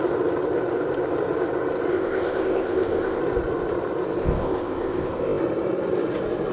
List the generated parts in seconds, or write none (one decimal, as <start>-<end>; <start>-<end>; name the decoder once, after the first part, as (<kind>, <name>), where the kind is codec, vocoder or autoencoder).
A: 1.9-3.2 (codec, ZipCodec); 4.2-5.4